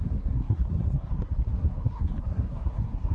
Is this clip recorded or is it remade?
remade